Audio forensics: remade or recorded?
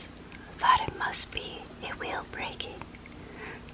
recorded